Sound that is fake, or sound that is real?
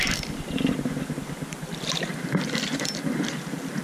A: real